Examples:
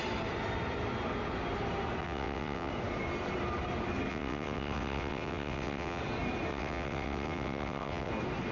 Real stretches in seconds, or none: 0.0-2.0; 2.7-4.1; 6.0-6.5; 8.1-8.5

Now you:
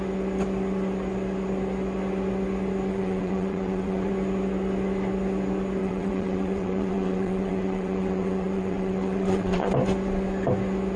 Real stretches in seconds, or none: 0.0-2.9; 4.1-5.8; 9.7-11.0

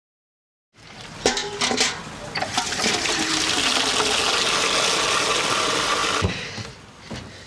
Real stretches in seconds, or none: 0.0-7.5

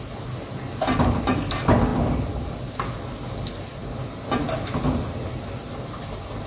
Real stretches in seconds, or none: 0.0-6.5

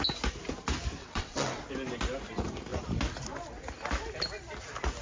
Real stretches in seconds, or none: 0.0-1.0; 1.6-5.0

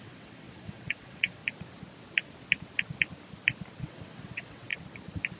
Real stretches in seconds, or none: 1.4-3.8; 4.7-5.4

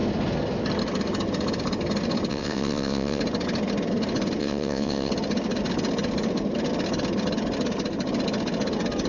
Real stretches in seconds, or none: 0.0-2.3; 3.2-4.4; 5.1-9.1

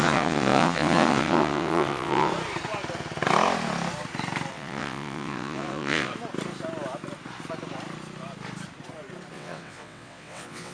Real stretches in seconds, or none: 2.3-4.5; 6.1-9.3